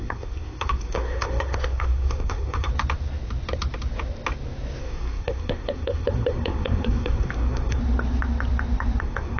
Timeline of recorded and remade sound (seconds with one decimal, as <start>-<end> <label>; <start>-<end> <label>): 0.0-2.7 remade; 2.7-4.8 recorded; 4.8-7.8 remade; 7.8-9.0 recorded; 9.0-9.4 remade